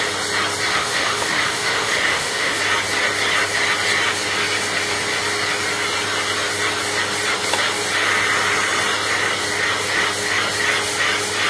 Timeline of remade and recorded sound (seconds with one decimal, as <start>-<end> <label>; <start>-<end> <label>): 0.0-0.7 recorded; 0.7-2.6 remade; 2.6-11.5 recorded